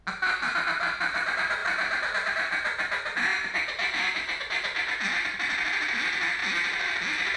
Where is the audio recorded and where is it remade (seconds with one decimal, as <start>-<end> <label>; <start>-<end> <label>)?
0.0-7.4 recorded